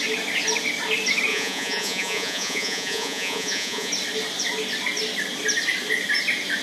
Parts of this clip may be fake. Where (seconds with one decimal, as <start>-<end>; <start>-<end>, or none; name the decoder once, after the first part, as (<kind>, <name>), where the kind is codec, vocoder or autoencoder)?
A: 1.3-3.9 (vocoder, Vocos)